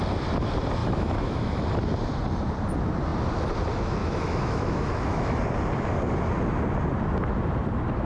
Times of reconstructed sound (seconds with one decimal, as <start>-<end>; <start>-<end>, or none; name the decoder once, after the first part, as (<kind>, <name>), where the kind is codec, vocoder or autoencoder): 0.8-1.6 (autoencoder, DAC-VAE); 4.0-5.4